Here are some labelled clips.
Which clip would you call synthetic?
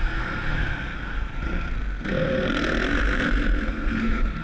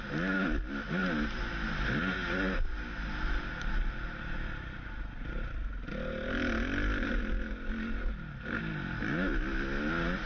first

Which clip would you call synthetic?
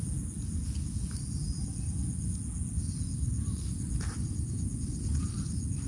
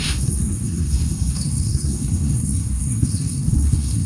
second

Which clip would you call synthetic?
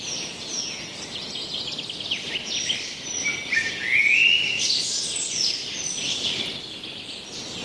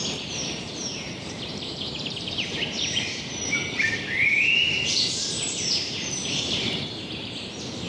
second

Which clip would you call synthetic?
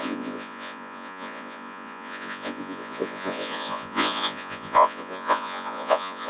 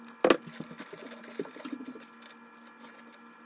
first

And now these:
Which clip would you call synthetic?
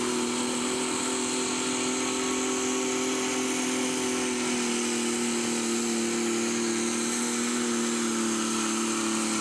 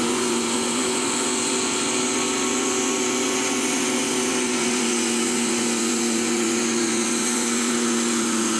second